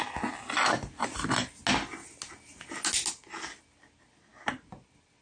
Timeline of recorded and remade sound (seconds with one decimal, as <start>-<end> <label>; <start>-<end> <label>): 0.0-5.2 recorded